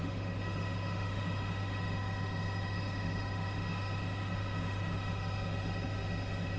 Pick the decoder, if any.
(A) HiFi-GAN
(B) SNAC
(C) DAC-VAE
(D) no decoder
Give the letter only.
C